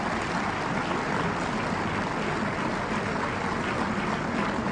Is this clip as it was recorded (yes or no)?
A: yes